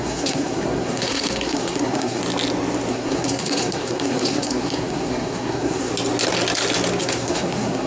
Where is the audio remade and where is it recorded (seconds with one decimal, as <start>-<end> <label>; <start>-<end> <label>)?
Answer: 0.0-2.2 remade; 2.2-2.9 recorded; 2.9-5.9 remade; 5.9-7.0 recorded; 7.0-7.9 remade